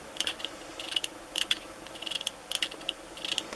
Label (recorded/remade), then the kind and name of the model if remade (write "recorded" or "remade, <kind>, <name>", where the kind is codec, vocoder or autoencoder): recorded